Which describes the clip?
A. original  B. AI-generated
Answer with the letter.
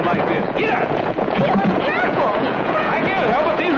B